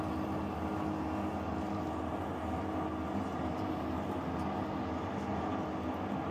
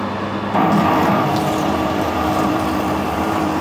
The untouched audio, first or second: first